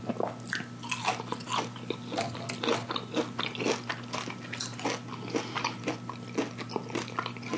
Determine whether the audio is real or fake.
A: real